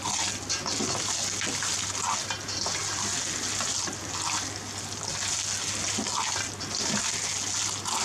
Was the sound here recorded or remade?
recorded